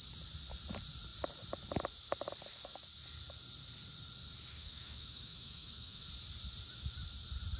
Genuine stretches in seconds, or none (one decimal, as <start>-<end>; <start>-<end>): 0.0-4.5; 6.1-7.6